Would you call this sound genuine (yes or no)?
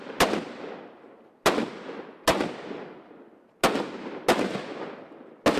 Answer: yes